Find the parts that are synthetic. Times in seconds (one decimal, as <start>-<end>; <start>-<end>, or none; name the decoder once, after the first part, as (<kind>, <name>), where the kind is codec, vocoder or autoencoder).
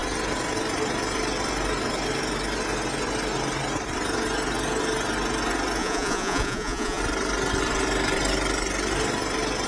5.8-7.0 (vocoder, Vocos)